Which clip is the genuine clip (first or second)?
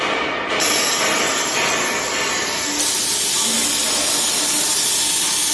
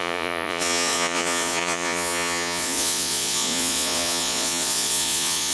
first